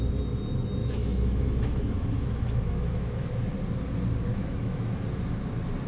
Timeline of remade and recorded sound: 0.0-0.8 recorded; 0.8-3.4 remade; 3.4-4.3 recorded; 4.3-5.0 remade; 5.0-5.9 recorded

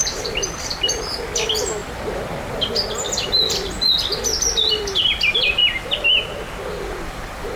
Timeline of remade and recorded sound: 0.0-5.6 remade; 5.6-6.8 recorded; 6.8-7.6 remade

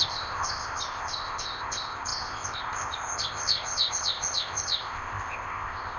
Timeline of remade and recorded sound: 0.0-6.0 remade

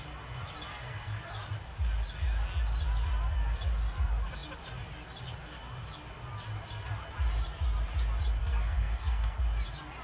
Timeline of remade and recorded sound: 0.0-0.7 recorded; 0.7-1.2 remade; 1.2-8.4 recorded; 8.4-9.4 remade; 9.4-10.0 recorded

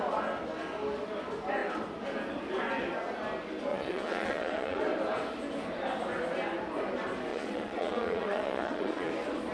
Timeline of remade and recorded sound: 0.0-3.7 recorded; 3.7-4.8 remade; 4.8-7.3 recorded; 7.3-9.1 remade; 9.1-9.5 recorded